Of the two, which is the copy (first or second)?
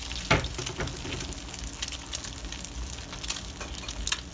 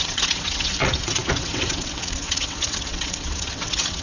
second